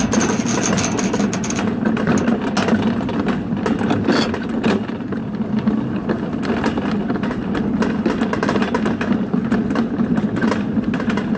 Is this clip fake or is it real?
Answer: real